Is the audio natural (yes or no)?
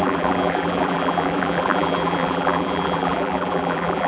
no